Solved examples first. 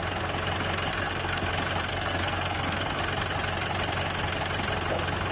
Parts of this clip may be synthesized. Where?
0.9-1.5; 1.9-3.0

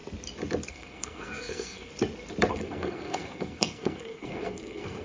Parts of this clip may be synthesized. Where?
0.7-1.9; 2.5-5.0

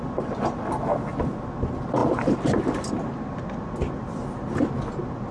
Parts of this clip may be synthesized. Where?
none